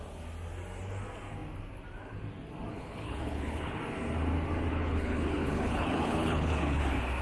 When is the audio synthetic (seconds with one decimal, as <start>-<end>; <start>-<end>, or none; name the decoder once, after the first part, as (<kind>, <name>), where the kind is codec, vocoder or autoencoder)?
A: 2.7-3.8 (codec, HILCodec); 4.7-6.8